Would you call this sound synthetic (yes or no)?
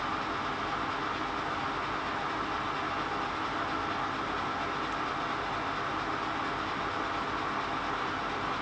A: no